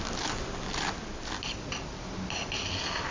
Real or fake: real